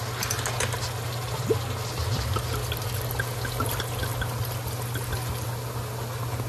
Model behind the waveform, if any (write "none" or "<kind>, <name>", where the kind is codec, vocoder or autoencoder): none